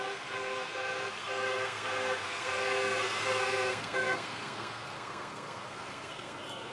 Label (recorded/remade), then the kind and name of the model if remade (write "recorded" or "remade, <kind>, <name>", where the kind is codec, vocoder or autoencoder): remade, codec, SNAC